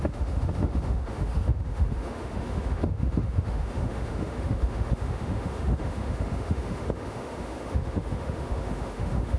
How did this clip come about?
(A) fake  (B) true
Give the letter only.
A